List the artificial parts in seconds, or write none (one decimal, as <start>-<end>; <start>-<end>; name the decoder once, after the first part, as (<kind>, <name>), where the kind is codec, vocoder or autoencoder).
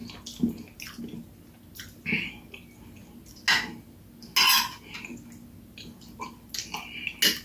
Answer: none